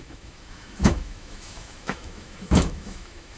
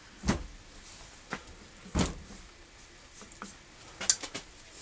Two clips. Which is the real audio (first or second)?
second